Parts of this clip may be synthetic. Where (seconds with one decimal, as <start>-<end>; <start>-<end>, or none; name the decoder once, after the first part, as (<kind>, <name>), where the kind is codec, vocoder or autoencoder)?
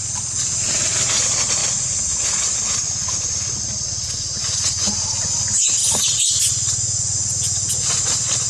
1.6-2.2 (vocoder, BigVGAN v2); 4.4-5.1